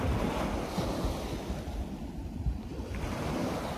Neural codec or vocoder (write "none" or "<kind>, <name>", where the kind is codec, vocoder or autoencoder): none